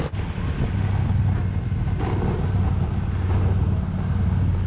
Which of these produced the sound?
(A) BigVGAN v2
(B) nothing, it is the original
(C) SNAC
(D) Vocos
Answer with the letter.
B